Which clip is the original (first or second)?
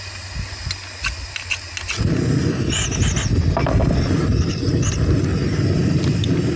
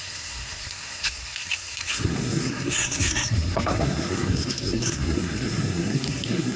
first